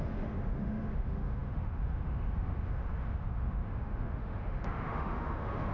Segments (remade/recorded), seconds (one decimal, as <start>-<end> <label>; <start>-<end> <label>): 0.0-5.7 remade